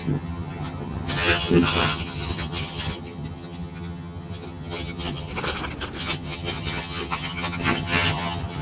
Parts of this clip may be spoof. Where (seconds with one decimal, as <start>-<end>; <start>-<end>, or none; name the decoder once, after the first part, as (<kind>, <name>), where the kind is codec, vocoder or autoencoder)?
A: 0.0-5.3 (vocoder, HiFi-GAN); 6.0-8.6